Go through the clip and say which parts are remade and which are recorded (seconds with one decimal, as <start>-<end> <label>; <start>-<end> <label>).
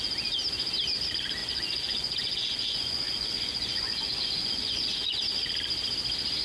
0.0-1.4 recorded; 1.4-5.2 remade; 5.2-6.4 recorded